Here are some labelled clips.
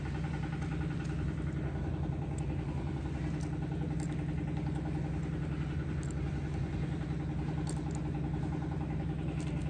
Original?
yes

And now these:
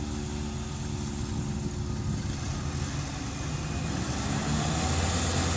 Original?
yes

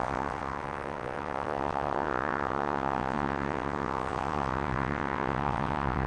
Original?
no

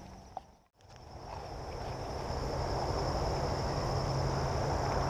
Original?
yes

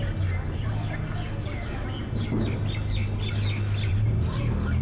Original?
yes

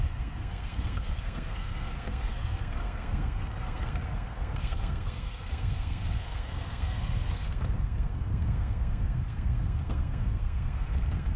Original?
no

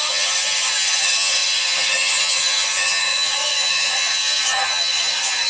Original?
no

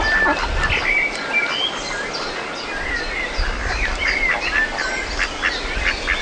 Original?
yes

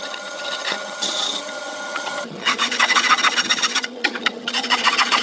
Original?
no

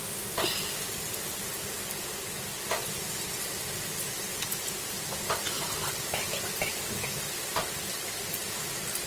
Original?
yes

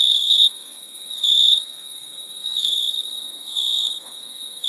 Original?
no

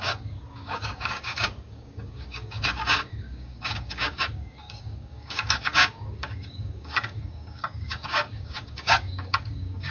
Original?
no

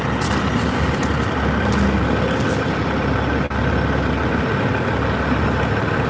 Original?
yes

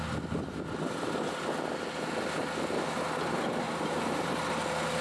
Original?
yes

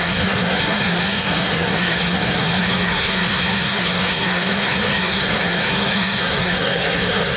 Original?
no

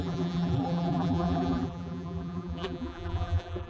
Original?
no